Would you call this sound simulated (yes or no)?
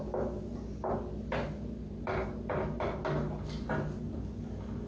no